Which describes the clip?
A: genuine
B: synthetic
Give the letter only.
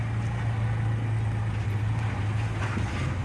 A